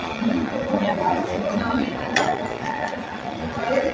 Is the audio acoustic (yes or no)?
no